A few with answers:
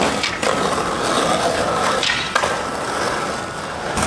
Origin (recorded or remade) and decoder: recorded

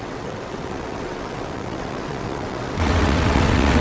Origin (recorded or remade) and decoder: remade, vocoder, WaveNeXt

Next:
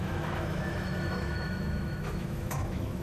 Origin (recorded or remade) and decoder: remade, autoencoder, DAC-VAE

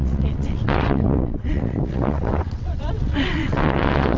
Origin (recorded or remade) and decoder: remade, vocoder, WaveNeXt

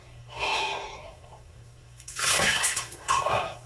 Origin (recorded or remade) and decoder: remade, codec, SNAC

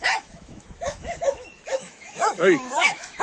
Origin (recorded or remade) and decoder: remade, autoencoder, DAC-VAE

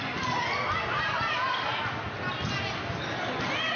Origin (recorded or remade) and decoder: recorded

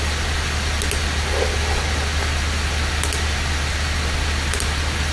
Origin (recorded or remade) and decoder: recorded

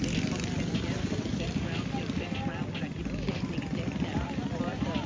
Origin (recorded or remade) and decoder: recorded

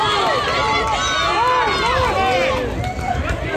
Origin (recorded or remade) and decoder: recorded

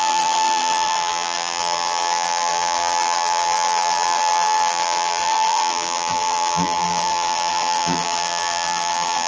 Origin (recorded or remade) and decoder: remade, vocoder, BigVGAN v2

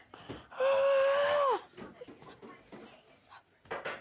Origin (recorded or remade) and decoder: recorded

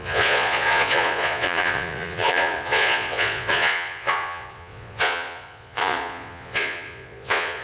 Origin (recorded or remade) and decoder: remade, vocoder, Vocos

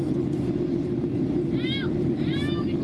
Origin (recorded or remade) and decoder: recorded